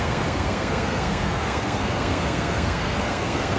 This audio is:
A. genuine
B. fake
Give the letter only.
B